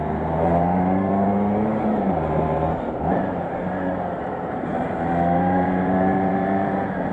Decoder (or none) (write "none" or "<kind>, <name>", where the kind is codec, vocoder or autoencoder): vocoder, BigVGAN v2